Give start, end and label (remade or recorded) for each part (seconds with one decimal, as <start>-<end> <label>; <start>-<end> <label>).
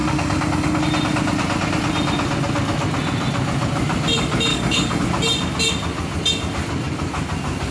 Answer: 0.0-0.8 remade; 0.8-4.5 recorded; 4.5-5.0 remade; 5.0-7.7 recorded